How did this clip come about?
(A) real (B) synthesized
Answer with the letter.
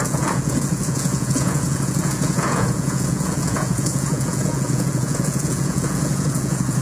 B